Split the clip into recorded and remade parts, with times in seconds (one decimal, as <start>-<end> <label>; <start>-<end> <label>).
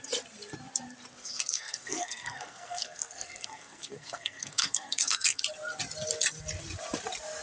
0.0-1.2 recorded; 1.2-5.4 remade; 5.4-7.4 recorded